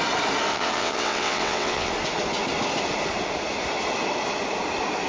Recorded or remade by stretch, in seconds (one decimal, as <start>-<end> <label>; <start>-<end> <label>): 0.0-0.5 recorded; 0.5-1.9 remade; 1.9-5.1 recorded